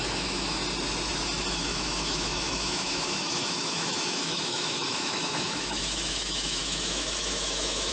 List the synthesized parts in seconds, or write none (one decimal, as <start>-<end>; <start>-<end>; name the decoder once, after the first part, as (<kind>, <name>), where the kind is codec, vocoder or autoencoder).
0.0-0.6 (autoencoder, DAC-VAE); 1.5-7.9